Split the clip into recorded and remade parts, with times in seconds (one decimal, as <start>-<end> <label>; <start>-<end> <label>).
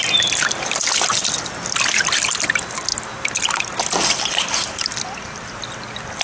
0.0-6.2 recorded